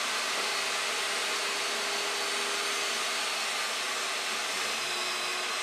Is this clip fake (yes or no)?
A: no